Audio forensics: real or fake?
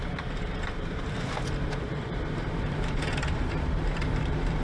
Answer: fake